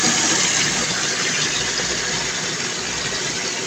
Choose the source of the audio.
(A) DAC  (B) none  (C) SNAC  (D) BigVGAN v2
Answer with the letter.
B